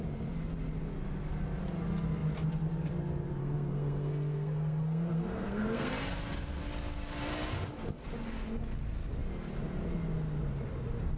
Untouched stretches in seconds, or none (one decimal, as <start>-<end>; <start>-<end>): 0.0-3.4; 5.9-11.2